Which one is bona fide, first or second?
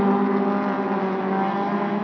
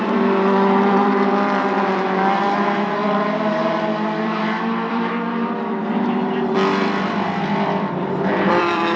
first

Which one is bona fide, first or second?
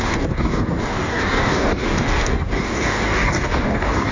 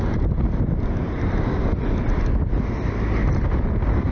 second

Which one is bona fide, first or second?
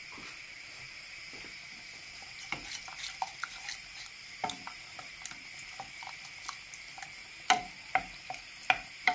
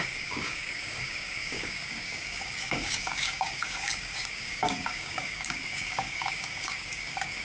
first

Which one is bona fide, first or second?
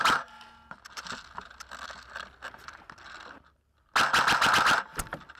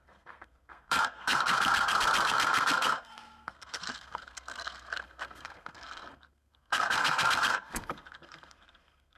first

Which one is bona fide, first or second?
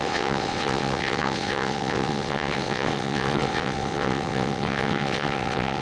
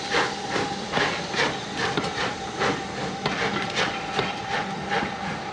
second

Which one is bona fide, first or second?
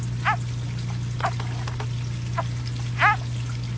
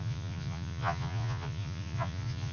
first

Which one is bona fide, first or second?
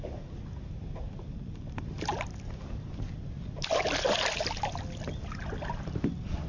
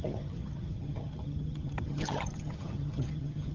first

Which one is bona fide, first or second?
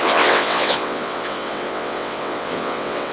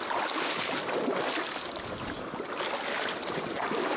second